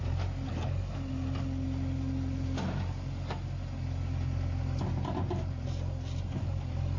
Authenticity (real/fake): real